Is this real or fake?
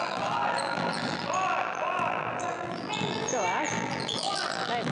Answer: fake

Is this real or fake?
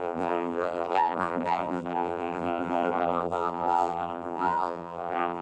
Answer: fake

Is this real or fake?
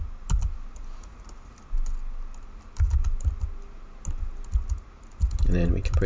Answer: real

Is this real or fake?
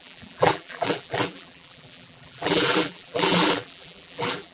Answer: fake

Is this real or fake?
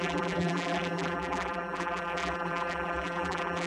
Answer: fake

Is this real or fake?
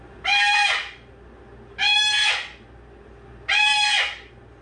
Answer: real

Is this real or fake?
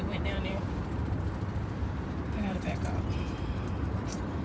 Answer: fake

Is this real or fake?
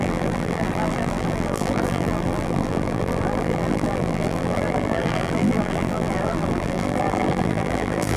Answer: fake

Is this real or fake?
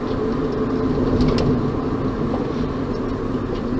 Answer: real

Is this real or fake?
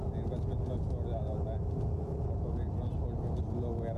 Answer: real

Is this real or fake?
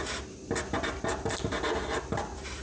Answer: real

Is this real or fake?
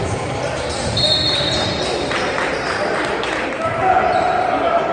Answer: fake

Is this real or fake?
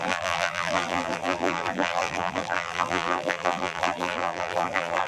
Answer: fake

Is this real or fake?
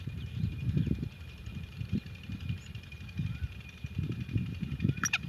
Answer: fake